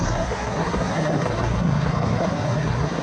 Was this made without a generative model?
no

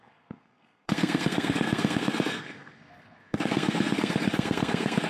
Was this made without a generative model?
no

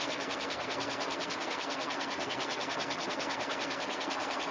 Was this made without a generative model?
no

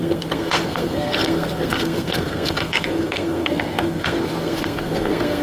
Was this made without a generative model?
no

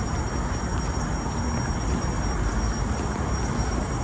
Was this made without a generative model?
yes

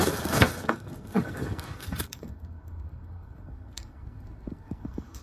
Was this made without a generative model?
no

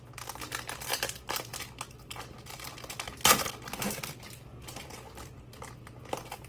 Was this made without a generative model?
yes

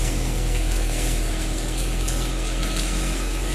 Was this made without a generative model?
no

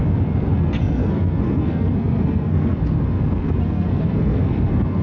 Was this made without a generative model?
no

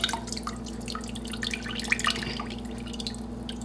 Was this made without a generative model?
yes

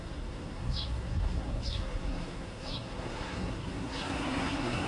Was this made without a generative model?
no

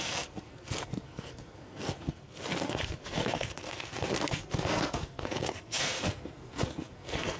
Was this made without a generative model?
no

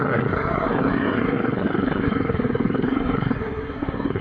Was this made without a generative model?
no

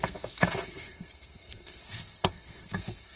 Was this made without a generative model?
no